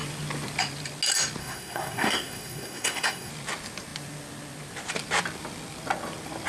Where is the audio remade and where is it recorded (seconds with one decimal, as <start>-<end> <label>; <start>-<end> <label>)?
0.0-1.4 recorded; 1.4-3.3 remade; 3.3-6.5 recorded